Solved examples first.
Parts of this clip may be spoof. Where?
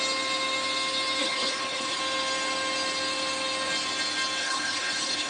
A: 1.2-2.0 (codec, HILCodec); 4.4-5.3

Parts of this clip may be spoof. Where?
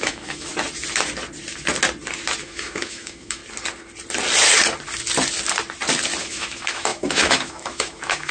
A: 0.0-0.5 (autoencoder, DAC-VAE); 2.4-3.4; 6.2-8.3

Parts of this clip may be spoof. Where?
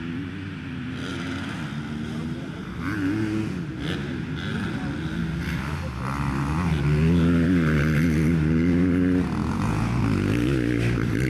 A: 9.4-10.0 (vocoder, Vocos)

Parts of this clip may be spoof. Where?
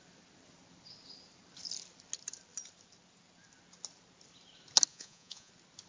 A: 4.9-5.5 (vocoder, Vocos)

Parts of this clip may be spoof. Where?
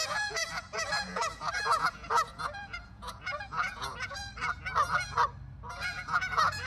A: 0.0-4.2 (vocoder, Vocos); 5.7-6.7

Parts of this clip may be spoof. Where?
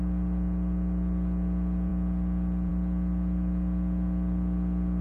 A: none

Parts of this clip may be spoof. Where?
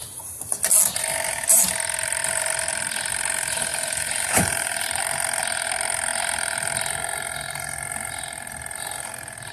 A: 3.7-5.0 (vocoder, BigVGAN v2)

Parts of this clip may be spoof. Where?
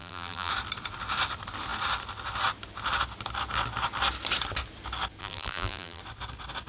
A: 0.0-0.5 (vocoder, BigVGAN v2); 5.2-6.0